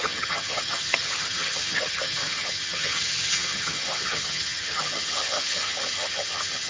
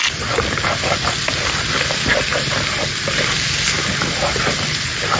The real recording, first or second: second